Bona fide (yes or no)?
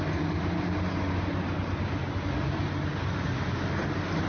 yes